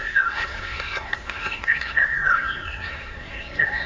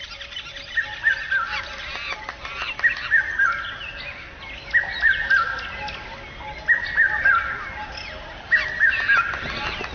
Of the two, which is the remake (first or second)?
first